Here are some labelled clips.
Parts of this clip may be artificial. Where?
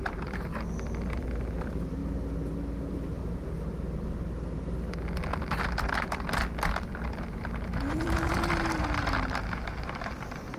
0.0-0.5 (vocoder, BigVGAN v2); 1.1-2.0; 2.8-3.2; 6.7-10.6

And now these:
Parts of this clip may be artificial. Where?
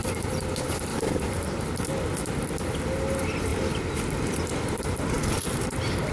0.9-1.4 (vocoder, BigVGAN v2)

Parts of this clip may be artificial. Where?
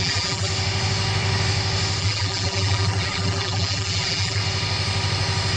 0.0-0.5 (vocoder, BigVGAN v2); 2.0-4.4